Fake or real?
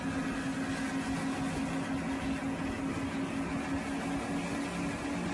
real